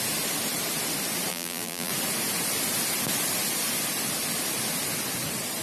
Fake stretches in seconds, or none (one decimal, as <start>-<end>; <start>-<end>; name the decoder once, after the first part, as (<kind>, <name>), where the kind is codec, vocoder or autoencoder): 1.3-1.9 (vocoder, BigVGAN v2)